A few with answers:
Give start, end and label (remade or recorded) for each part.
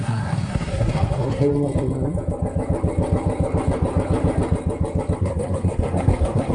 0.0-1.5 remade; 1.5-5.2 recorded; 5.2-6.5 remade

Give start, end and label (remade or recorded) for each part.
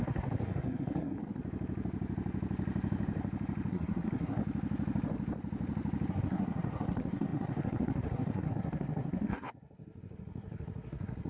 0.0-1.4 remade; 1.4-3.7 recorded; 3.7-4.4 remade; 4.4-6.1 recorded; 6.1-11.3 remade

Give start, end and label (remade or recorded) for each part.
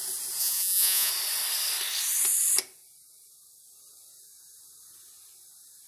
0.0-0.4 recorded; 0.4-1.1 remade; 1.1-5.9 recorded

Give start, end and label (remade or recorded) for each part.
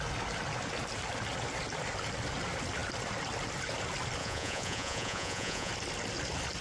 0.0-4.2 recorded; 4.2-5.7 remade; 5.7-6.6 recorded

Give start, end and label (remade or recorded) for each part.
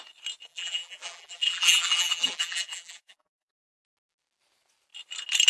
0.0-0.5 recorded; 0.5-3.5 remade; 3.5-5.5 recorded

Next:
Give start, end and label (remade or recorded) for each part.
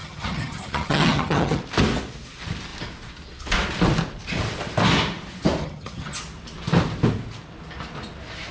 0.0-1.6 remade; 1.6-5.6 recorded; 5.6-6.2 remade; 6.2-8.5 recorded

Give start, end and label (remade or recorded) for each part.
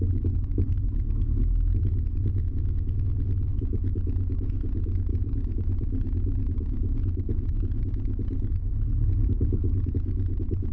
0.0-5.1 recorded; 5.1-9.9 remade; 9.9-10.7 recorded